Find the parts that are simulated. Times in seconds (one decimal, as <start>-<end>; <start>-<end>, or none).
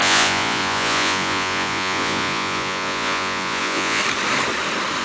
0.0-4.0